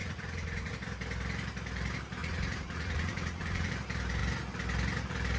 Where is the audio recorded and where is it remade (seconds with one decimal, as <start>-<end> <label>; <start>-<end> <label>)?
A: 0.0-0.7 remade; 0.7-2.2 recorded; 2.2-3.7 remade; 3.7-5.4 recorded